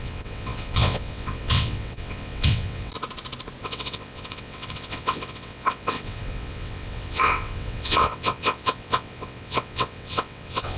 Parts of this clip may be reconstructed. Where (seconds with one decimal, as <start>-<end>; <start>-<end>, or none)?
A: 0.0-2.9; 3.6-10.8